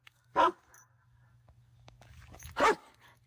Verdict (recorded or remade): remade